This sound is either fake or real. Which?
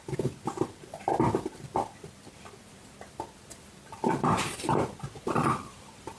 fake